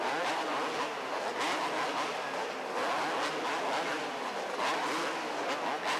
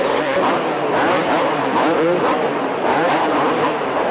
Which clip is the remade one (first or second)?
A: second